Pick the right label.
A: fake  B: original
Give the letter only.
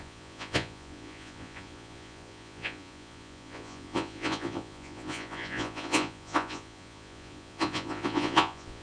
A